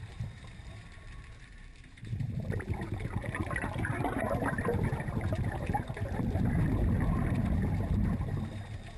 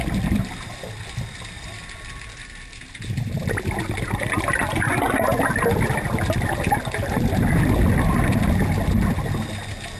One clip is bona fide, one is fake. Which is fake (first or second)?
first